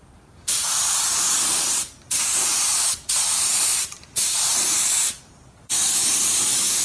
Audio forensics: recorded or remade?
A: remade